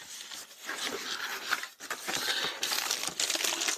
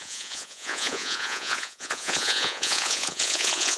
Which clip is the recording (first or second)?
first